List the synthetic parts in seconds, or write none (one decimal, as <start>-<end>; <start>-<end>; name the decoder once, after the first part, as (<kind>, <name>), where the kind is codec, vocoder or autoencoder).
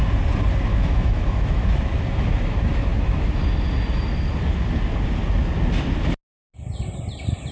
0.7-1.8 (autoencoder, DAC-VAE)